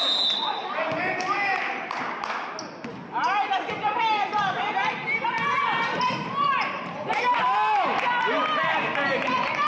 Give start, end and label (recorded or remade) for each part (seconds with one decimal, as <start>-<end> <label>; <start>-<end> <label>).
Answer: 0.0-2.9 recorded; 2.9-8.1 remade; 8.1-9.7 recorded